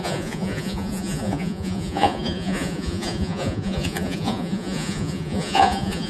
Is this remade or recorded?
remade